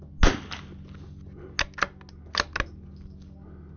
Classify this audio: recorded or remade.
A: recorded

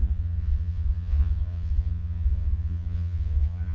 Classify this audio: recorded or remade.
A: remade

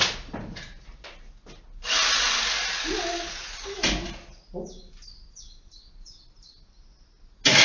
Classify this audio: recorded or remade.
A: recorded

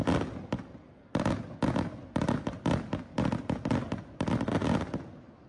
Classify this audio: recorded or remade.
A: recorded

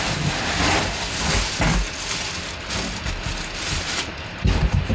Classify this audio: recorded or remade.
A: recorded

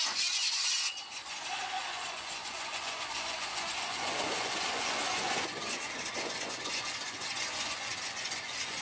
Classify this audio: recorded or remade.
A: remade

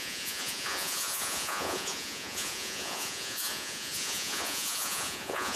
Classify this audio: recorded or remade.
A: remade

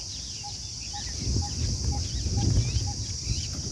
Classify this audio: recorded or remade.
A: recorded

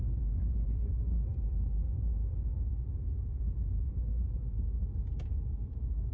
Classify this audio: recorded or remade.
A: recorded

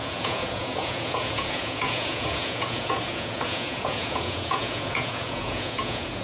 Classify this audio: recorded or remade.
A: remade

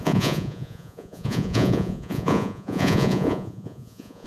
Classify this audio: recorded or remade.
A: remade